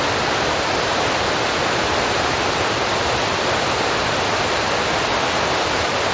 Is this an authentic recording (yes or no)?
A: yes